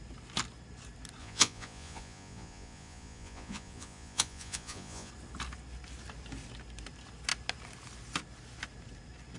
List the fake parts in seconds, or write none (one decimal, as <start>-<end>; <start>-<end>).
1.2-5.1